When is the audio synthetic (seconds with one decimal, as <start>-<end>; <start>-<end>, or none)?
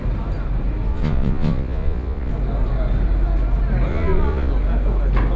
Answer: 0.9-2.3; 3.9-4.5